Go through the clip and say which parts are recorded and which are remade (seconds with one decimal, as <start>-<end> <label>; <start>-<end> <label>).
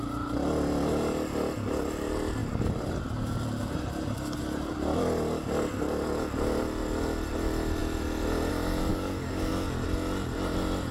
0.0-8.9 recorded; 8.9-9.5 remade; 9.5-10.9 recorded